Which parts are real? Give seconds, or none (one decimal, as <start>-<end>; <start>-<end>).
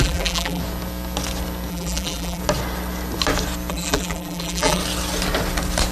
0.6-1.7; 2.4-3.7; 4.8-5.9